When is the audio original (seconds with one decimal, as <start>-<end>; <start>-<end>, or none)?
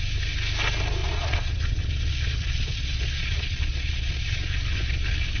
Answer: 0.0-1.0; 4.2-5.4